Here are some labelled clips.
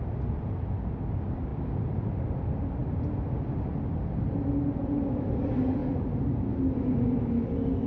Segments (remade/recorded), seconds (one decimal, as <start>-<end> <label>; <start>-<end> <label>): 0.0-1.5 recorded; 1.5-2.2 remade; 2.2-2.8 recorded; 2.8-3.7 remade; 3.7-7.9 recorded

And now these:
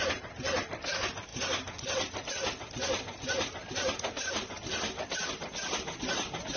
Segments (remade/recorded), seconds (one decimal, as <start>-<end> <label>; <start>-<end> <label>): 0.0-6.6 recorded

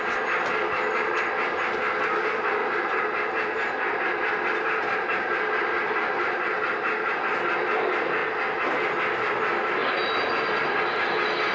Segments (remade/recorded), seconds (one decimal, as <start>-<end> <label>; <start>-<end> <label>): 0.0-2.6 recorded; 2.6-7.1 remade; 7.1-9.8 recorded; 9.8-10.8 remade; 10.8-11.5 recorded

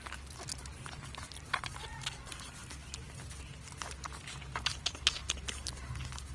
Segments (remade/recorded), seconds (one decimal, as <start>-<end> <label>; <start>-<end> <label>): 0.0-6.3 recorded